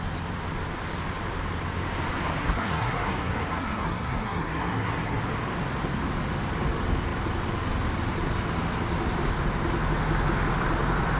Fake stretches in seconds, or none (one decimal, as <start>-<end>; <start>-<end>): 2.4-5.2